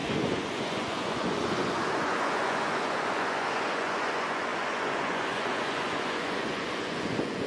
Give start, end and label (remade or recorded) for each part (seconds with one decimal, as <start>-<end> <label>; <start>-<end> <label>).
0.0-7.5 remade